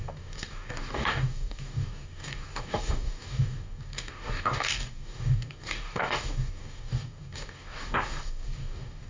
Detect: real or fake fake